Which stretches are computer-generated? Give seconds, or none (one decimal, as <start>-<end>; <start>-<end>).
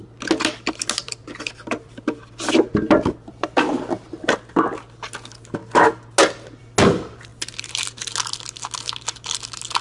1.0-4.6